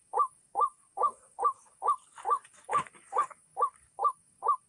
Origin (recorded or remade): remade